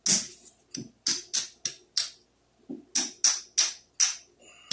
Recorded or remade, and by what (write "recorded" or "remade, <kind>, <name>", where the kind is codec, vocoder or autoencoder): recorded